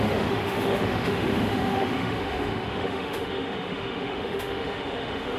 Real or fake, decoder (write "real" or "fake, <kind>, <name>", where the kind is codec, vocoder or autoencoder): fake, autoencoder, DAC-VAE